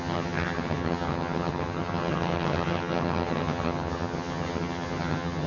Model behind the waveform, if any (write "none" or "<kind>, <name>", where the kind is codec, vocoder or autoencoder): vocoder, HiFi-GAN